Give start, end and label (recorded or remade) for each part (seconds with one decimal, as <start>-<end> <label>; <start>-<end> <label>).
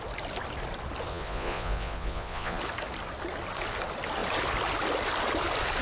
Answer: 0.0-1.1 recorded; 1.1-2.6 remade; 2.6-5.8 recorded